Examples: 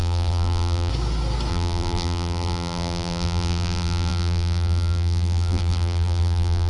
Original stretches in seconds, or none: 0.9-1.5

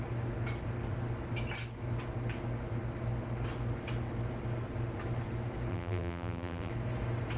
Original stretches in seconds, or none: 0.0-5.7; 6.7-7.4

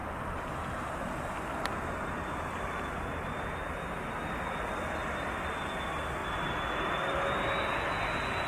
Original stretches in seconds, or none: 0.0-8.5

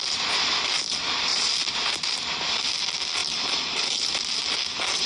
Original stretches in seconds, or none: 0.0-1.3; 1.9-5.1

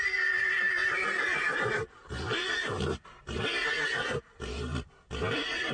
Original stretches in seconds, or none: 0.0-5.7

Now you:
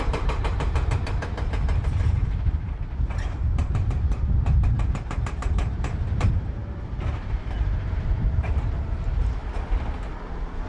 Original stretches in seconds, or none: 6.6-7.4; 9.4-10.7

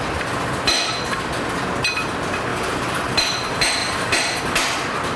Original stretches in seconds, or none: 0.0-2.5; 3.0-3.8; 4.4-5.2